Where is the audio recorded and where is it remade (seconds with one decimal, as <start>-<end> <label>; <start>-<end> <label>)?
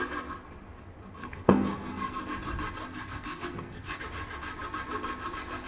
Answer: 0.0-1.2 recorded; 1.2-2.2 remade; 2.2-2.9 recorded; 2.9-4.0 remade; 4.0-5.7 recorded